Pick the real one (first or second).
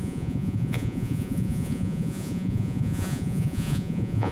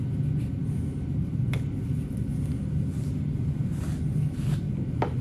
second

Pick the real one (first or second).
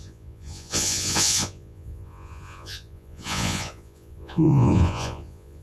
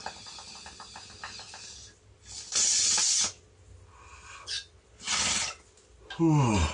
second